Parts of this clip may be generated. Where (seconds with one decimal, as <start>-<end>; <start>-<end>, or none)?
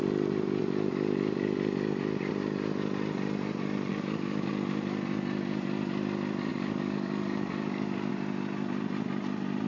3.9-4.5; 6.5-8.1